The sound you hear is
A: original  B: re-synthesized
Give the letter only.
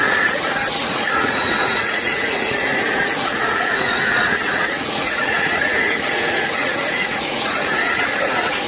B